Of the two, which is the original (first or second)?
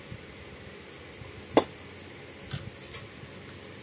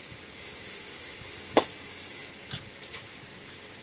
first